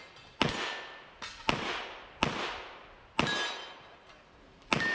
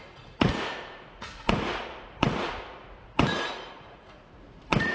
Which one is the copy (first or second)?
second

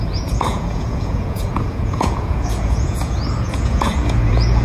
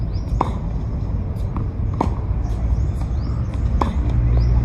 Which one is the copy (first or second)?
first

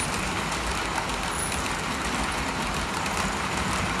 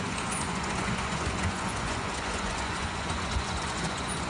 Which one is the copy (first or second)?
second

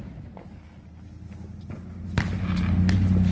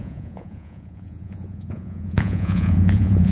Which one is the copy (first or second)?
second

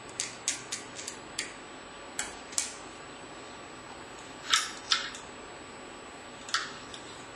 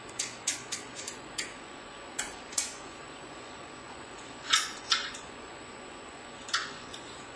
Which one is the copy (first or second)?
second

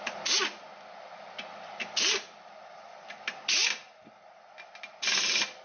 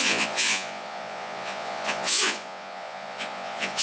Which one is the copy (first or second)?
second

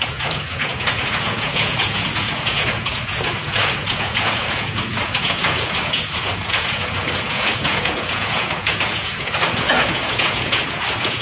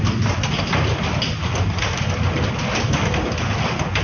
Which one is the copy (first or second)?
first